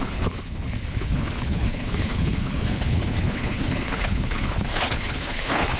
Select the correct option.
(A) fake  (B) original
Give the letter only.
A